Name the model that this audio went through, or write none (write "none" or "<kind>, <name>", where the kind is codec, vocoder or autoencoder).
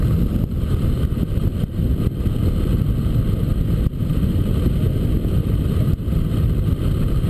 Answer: none